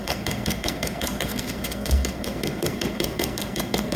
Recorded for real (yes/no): no